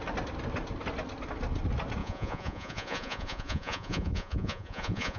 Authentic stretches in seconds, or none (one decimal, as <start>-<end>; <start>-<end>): 0.0-2.0